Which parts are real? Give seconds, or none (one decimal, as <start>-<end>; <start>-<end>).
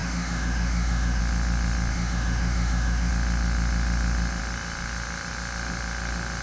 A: 1.2-1.9; 3.1-6.4